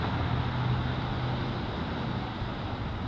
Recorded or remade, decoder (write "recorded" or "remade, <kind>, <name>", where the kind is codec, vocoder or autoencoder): recorded